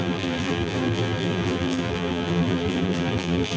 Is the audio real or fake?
fake